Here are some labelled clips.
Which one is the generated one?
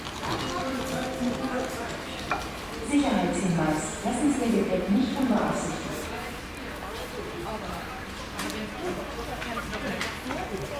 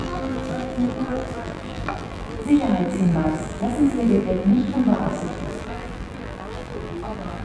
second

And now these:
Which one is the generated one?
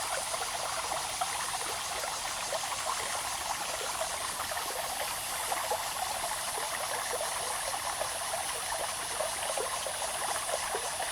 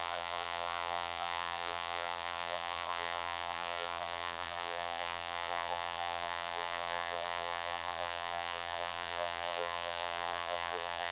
second